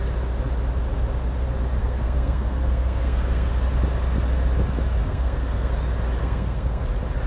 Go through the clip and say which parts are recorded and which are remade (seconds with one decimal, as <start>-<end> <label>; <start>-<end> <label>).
0.0-1.8 recorded; 1.8-3.5 remade; 3.5-5.0 recorded; 5.0-5.7 remade; 5.7-6.2 recorded; 6.2-6.8 remade; 6.8-7.3 recorded